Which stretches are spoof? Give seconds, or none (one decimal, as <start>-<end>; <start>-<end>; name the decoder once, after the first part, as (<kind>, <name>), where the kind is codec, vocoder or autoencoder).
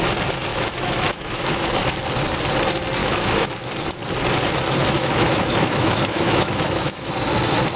0.5-1.8 (autoencoder, DAC-VAE); 3.0-3.5; 4.8-7.1